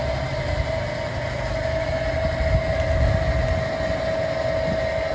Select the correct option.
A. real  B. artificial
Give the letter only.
A